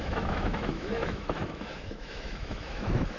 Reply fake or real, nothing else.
fake